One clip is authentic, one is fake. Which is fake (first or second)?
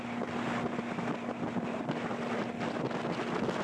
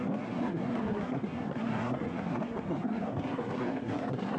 second